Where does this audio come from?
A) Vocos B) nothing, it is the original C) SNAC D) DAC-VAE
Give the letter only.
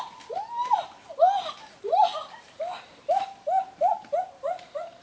B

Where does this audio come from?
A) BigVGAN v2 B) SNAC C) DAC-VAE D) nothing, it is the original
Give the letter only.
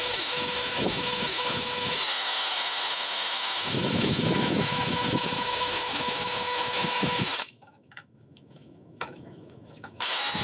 C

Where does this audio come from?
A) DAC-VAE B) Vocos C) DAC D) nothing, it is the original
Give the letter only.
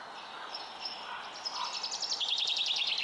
D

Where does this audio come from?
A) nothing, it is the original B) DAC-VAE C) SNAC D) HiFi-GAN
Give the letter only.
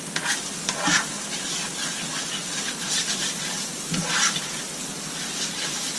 A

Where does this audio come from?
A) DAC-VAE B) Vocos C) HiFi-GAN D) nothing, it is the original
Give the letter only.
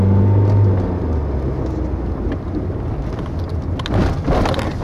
D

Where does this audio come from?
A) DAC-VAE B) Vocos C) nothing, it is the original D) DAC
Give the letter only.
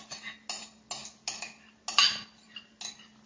C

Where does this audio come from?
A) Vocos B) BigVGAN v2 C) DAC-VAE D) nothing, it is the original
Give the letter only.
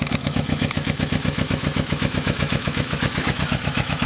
C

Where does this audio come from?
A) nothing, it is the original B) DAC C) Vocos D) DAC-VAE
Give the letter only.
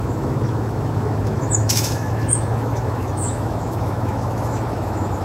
D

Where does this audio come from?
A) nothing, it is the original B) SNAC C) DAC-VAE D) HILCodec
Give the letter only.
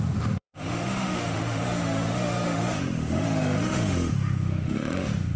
C